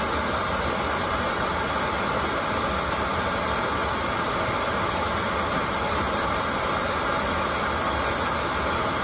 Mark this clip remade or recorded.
recorded